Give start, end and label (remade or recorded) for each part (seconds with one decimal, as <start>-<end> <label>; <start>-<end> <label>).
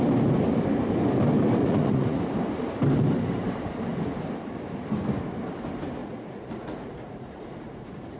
0.0-1.6 recorded; 1.6-2.2 remade; 2.2-6.0 recorded; 6.0-8.2 remade